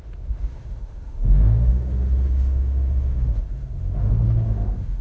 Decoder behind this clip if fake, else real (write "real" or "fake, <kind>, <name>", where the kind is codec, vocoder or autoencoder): fake, autoencoder, DAC-VAE